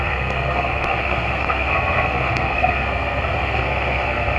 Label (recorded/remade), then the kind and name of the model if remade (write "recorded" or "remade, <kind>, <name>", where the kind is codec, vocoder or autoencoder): remade, codec, SNAC